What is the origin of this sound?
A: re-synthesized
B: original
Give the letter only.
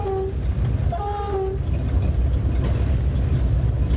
B